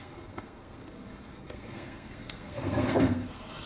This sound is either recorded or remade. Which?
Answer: remade